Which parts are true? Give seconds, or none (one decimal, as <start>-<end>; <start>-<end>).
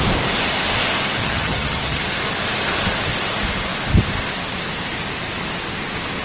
0.0-1.2; 2.0-6.2